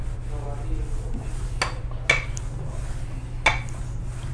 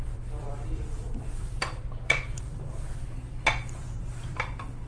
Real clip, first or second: first